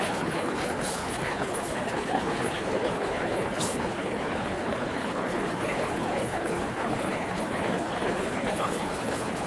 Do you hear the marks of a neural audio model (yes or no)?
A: yes